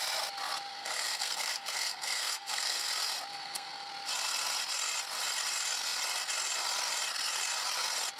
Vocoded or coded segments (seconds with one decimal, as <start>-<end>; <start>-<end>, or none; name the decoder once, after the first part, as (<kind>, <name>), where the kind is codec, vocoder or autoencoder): 0.7-2.9 (codec, SNAC); 3.3-3.9